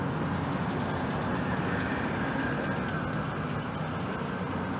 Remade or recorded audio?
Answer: recorded